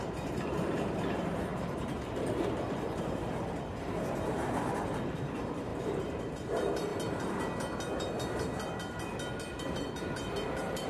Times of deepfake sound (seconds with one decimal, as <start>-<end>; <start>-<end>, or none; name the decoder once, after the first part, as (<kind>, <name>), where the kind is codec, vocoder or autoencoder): 0.0-6.9 (vocoder, BigVGAN v2); 9.6-10.9